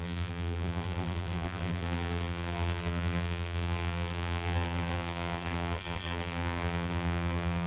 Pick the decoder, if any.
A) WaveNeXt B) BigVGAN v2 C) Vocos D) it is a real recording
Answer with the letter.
B